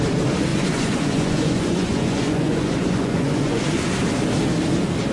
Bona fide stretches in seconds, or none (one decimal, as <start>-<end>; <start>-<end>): 0.0-0.5; 3.6-5.1